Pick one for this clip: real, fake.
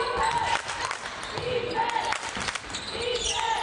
real